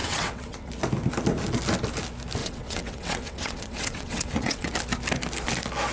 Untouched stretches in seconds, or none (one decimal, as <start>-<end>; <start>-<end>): 0.7-2.4; 4.7-5.9